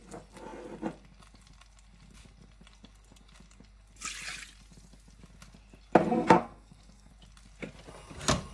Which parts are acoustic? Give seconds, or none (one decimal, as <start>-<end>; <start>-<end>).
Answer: 0.0-6.1; 7.1-8.5